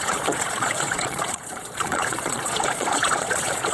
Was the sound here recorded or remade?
remade